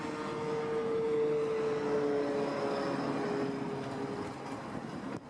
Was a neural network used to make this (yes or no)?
no